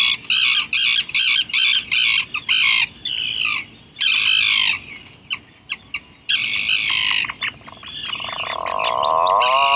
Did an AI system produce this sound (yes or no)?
no